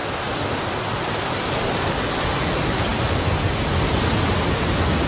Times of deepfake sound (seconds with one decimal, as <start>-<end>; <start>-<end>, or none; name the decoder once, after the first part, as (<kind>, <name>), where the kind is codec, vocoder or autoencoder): none